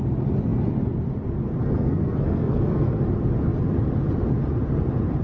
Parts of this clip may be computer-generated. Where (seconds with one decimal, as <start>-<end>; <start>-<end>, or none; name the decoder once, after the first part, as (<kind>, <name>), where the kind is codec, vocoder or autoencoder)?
1.6-3.0 (codec, SNAC)

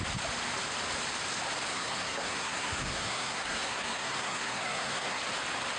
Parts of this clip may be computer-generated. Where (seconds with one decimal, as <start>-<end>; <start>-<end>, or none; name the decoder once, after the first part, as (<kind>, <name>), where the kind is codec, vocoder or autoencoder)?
1.7-5.2 (codec, SNAC)